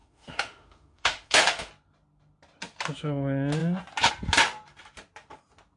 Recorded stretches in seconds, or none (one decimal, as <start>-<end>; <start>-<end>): 1.7-5.8